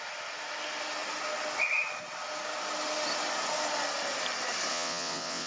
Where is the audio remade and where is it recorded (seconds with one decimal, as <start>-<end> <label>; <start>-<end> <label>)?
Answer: 0.0-4.7 recorded; 4.7-5.5 remade